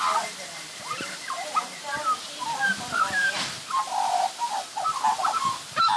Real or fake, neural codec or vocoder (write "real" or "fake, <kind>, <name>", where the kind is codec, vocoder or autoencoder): real